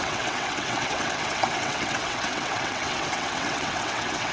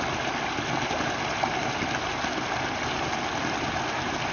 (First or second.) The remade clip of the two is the first